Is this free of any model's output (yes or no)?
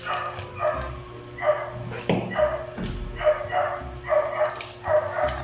yes